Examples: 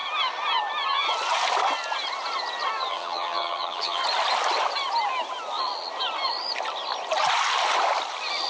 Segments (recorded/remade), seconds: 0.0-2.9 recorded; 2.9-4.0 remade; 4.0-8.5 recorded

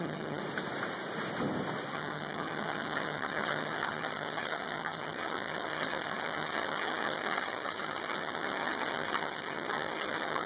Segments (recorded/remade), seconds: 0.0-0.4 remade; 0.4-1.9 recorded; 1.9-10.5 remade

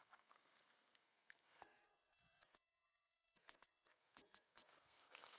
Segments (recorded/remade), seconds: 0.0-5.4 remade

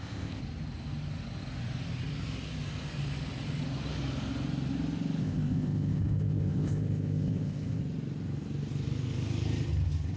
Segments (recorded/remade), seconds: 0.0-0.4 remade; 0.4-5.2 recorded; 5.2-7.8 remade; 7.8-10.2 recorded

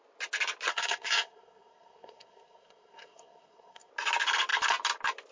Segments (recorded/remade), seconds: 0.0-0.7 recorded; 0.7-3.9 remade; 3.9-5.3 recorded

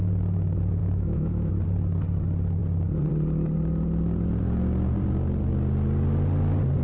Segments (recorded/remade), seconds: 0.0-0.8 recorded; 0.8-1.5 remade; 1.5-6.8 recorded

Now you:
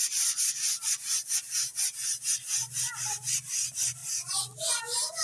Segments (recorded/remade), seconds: 0.0-5.2 recorded